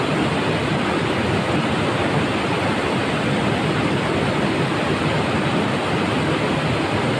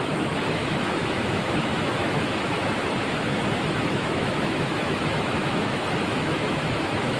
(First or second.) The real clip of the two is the first